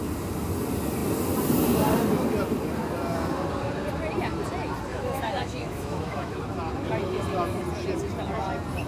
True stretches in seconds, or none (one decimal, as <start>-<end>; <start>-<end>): 0.0-4.9; 6.4-8.9